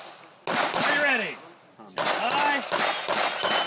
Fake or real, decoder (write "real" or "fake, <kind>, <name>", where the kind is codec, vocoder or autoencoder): real